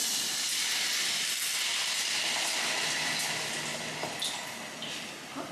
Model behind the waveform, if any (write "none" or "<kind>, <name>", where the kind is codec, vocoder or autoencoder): none